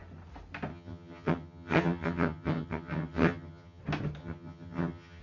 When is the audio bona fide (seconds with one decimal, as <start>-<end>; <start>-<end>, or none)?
0.0-0.7; 3.8-4.2